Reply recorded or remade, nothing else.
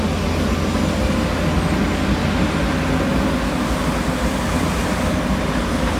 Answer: recorded